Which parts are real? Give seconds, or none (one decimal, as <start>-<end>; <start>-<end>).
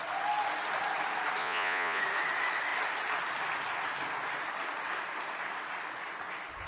0.0-1.4; 2.0-6.7